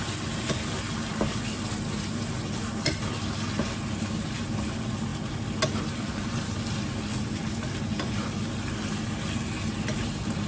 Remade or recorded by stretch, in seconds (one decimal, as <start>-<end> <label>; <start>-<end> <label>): 0.0-10.5 recorded